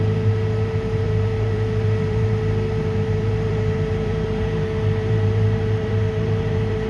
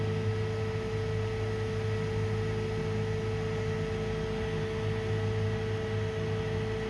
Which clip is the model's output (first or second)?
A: first